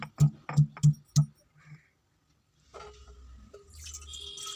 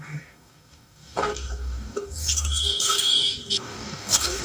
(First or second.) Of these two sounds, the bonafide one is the first